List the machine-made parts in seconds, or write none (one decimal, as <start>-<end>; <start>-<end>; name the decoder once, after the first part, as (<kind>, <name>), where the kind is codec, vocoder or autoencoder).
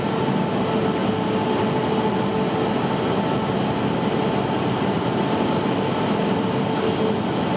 none